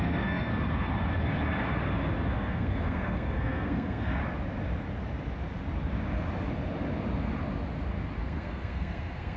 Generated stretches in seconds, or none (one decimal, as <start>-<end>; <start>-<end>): 0.0-0.5; 2.3-4.2; 8.2-9.4

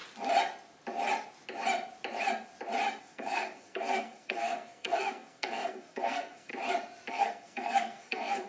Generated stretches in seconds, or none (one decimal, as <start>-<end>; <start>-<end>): 3.0-6.5; 7.1-8.5

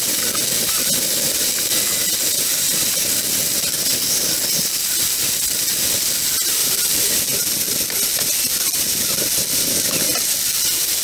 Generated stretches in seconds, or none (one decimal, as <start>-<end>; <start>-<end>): 6.6-7.2

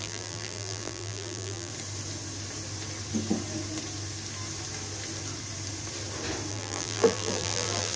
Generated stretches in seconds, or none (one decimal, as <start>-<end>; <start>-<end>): 0.0-1.7; 6.5-8.0

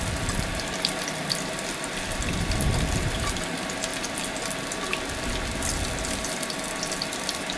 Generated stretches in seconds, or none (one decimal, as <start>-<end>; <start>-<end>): 0.0-3.9; 6.8-7.6

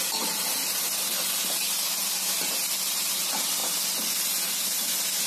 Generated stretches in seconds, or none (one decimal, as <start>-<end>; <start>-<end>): none

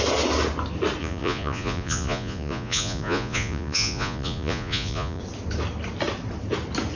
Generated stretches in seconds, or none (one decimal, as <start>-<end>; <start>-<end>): 1.0-5.2

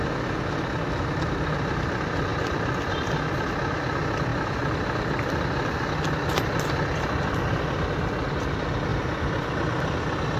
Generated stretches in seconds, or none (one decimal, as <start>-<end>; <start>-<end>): none